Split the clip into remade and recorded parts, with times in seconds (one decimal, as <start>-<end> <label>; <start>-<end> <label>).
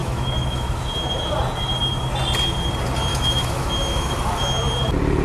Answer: 0.0-0.8 remade; 0.8-3.1 recorded; 3.1-4.1 remade; 4.1-5.2 recorded